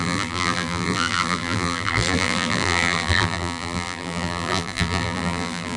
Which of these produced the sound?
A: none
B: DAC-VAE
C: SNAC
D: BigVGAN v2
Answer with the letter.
D